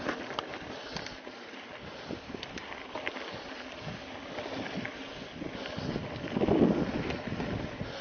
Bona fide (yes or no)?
yes